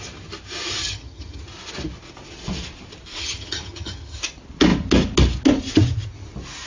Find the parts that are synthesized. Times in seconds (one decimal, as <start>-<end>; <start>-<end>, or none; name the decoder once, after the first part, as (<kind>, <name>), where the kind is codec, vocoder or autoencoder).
0.8-1.4 (vocoder, HiFi-GAN); 3.2-4.2